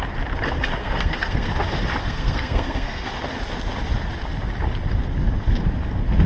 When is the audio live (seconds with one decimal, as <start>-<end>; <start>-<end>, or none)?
0.0-0.8; 1.5-2.0; 3.1-6.3